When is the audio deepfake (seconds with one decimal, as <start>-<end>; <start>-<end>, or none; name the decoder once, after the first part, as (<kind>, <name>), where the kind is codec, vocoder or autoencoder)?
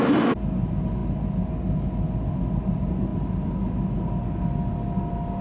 none